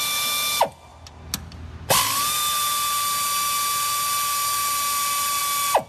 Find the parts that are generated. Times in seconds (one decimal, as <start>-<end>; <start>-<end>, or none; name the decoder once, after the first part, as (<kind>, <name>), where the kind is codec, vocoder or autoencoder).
none